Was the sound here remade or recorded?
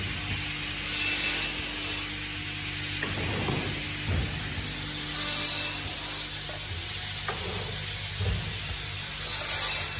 recorded